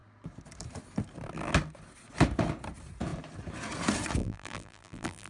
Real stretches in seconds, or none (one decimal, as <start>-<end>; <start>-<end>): 0.0-4.2

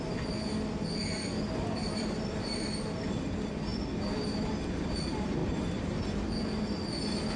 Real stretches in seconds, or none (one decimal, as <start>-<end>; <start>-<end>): 0.0-1.2; 3.1-3.7; 4.8-5.4; 6.4-7.4

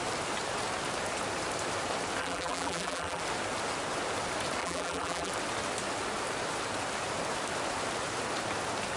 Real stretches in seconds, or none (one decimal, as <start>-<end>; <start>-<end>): 0.0-2.2; 3.2-4.6; 5.3-9.0

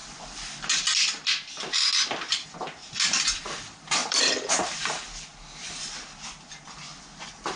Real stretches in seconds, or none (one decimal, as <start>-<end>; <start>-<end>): 0.0-4.0; 7.0-7.6

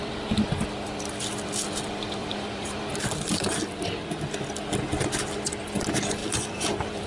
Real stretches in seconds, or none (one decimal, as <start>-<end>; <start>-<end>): 0.0-2.2; 2.8-6.2